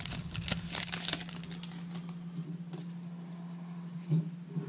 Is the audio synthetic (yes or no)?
no